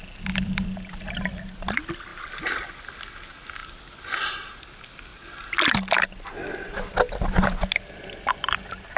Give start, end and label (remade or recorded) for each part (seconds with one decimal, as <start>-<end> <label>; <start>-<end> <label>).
0.0-9.0 recorded